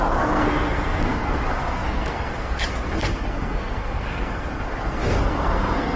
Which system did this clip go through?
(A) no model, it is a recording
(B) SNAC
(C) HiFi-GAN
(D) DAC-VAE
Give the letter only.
B